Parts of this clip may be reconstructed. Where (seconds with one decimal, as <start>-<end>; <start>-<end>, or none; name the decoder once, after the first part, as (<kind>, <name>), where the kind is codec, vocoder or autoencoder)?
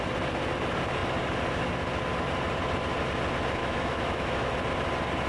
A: 3.6-4.5 (autoencoder, DAC-VAE)